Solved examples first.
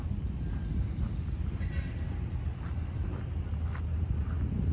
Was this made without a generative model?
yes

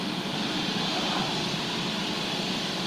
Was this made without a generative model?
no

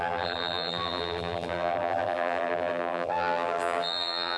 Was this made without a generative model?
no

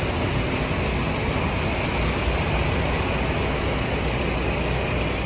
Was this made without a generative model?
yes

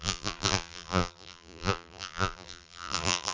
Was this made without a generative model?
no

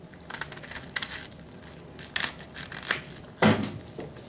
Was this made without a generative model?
yes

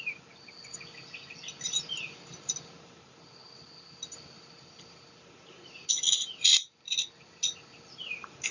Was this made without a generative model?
yes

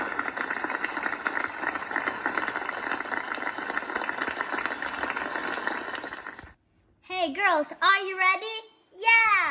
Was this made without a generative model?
yes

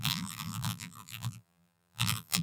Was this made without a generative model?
no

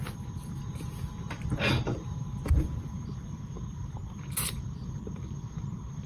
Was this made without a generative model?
no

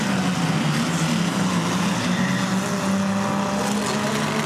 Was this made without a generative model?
yes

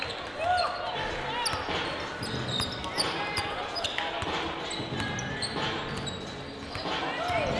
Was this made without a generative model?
yes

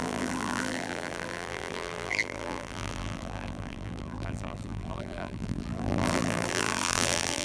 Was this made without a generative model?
no